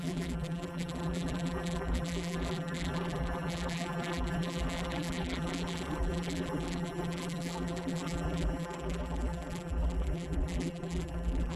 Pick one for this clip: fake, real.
fake